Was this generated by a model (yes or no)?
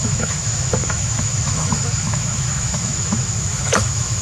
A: yes